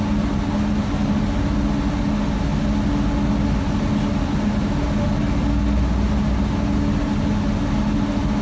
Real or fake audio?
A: real